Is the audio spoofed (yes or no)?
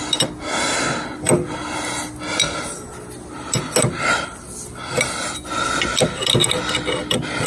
no